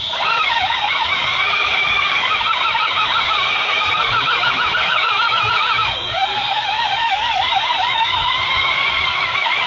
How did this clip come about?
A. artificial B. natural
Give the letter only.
A